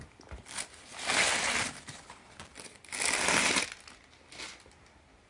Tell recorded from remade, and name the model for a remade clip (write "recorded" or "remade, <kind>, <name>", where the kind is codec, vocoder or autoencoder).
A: recorded